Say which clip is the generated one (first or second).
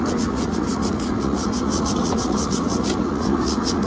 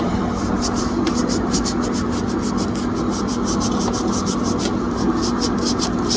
first